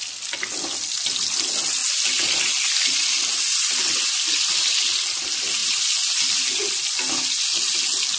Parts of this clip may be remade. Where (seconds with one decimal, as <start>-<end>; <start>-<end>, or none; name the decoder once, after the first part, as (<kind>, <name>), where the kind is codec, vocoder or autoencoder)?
none